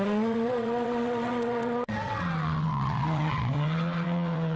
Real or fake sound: fake